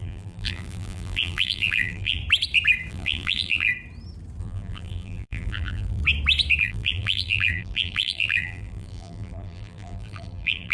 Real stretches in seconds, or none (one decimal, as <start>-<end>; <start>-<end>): 2.2-2.9; 3.7-4.4; 6.0-6.6